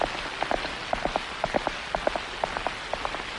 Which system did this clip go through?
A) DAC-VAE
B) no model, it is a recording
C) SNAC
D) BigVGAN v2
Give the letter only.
B